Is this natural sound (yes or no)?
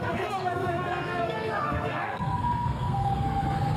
no